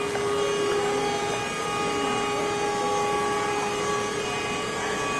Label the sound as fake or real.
real